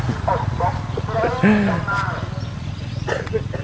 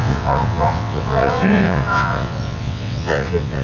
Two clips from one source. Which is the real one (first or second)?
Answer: first